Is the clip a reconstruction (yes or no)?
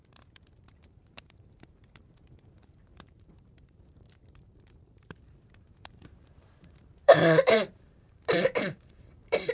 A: yes